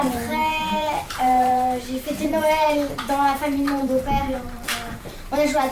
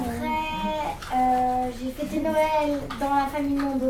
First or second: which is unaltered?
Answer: second